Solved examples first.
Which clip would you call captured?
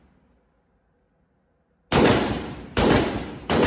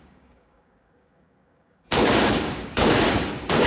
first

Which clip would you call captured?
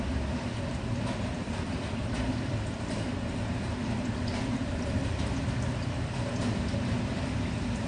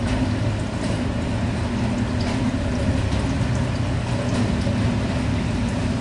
second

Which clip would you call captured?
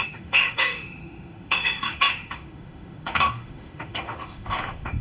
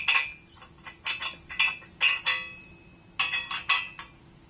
second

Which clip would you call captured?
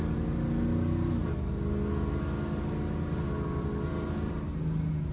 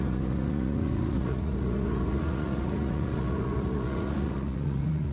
first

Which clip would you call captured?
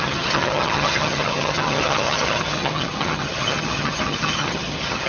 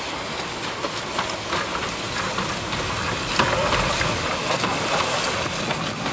second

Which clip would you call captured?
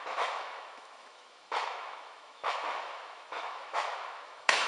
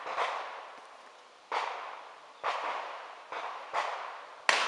second